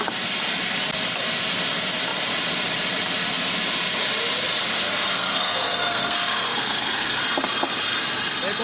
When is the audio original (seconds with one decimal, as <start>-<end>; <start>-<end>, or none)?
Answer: 0.0-5.1; 7.2-8.6